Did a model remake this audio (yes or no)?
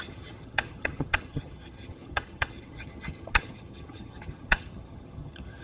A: yes